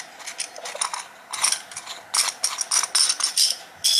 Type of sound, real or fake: real